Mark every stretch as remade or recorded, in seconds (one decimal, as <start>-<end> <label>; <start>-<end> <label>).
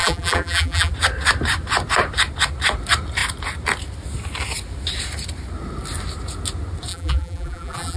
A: 0.0-0.9 remade; 0.9-6.9 recorded; 6.9-8.0 remade